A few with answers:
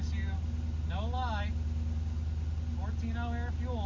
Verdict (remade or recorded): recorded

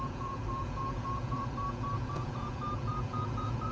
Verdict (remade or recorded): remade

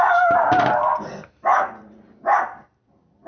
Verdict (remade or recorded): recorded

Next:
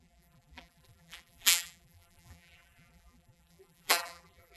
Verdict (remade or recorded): remade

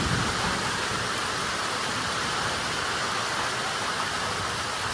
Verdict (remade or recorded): recorded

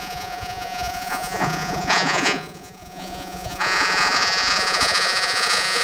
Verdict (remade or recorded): remade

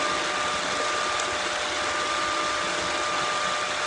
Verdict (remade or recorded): recorded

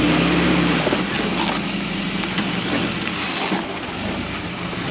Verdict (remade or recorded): recorded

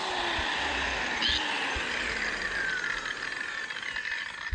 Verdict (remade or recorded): recorded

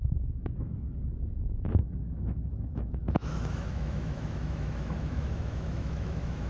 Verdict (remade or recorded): remade